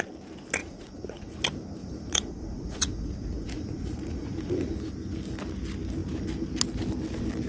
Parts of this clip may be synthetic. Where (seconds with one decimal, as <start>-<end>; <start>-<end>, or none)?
0.6-1.4; 1.8-4.9